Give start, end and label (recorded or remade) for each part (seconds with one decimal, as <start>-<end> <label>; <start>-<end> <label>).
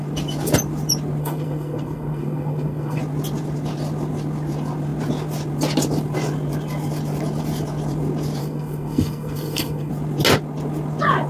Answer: 0.0-1.2 recorded; 1.2-3.0 remade; 3.0-8.4 recorded; 8.4-9.9 remade; 9.9-11.3 recorded